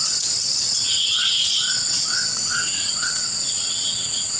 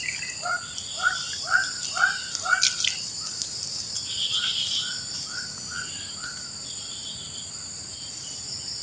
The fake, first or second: first